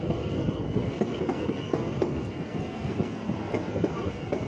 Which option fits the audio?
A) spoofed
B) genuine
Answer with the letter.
A